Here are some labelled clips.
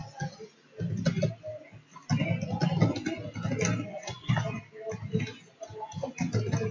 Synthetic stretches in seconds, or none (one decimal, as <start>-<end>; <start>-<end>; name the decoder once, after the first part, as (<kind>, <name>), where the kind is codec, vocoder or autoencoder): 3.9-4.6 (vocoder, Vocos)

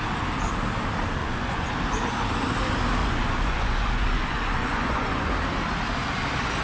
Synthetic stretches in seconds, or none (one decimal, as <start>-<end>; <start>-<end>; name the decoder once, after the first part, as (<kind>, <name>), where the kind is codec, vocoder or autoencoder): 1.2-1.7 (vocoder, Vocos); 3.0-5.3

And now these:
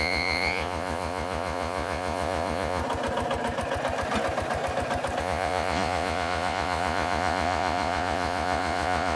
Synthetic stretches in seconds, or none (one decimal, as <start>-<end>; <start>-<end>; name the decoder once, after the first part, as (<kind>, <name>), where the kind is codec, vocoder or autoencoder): 0.0-2.8 (vocoder, Vocos); 5.2-9.2